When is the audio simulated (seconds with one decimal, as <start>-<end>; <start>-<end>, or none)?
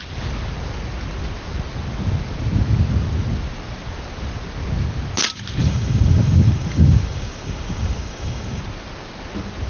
5.6-8.6